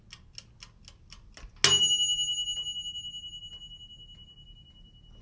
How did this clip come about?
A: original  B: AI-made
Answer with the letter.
A